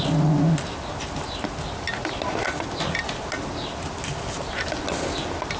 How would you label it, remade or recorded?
recorded